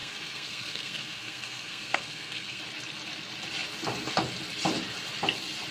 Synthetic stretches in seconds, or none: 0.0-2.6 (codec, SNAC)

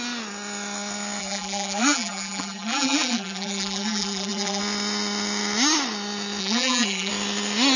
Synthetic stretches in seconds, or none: 1.2-4.6 (vocoder, BigVGAN v2); 6.4-7.1

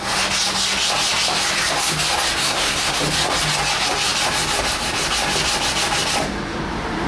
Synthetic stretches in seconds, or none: 2.4-3.0 (codec, SNAC)

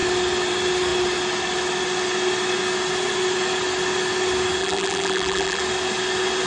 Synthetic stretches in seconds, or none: 4.6-5.6 (vocoder, BigVGAN v2)

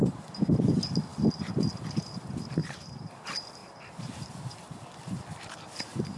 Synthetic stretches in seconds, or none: 2.6-3.1 (vocoder, BigVGAN v2); 3.6-4.3